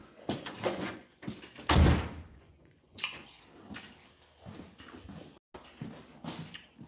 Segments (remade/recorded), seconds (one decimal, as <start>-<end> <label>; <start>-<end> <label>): 0.0-1.2 remade; 1.2-2.3 recorded; 2.3-3.4 remade; 3.4-6.9 recorded